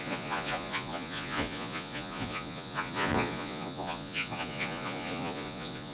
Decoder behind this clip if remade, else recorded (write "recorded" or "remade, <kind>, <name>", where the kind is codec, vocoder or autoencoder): remade, vocoder, Vocos